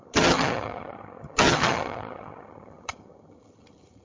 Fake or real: fake